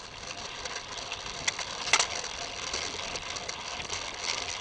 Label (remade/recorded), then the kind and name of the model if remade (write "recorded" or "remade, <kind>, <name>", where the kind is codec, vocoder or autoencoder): recorded